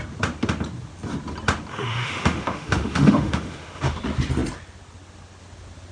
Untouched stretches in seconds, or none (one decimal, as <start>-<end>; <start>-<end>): 0.0-1.7; 4.0-5.9